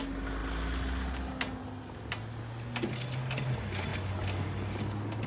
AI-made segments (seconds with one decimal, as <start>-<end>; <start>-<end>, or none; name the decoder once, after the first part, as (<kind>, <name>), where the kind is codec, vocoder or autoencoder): none